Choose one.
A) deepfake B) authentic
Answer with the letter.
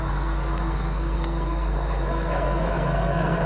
A